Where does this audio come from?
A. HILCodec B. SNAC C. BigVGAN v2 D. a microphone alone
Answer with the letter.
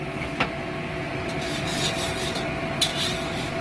D